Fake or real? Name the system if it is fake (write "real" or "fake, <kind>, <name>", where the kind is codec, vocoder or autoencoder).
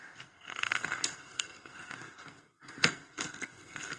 fake, codec, SNAC